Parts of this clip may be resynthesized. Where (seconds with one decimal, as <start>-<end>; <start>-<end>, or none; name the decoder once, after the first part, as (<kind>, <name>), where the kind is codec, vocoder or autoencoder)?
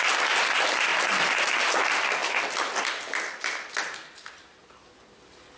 none